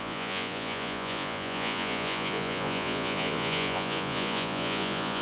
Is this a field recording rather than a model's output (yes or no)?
no